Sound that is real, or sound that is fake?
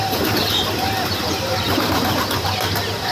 fake